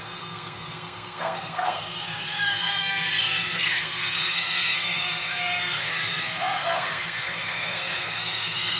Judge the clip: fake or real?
fake